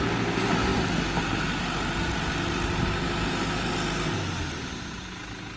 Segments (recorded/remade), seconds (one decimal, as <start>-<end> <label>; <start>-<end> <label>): 0.0-5.6 recorded